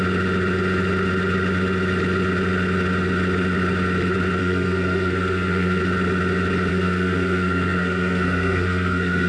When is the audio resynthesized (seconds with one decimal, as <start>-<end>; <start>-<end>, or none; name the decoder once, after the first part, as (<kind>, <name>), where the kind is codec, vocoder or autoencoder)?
4.4-5.8 (codec, SNAC); 6.7-9.3